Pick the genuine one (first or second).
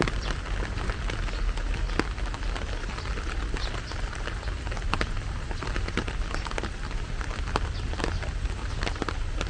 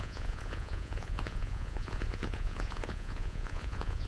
first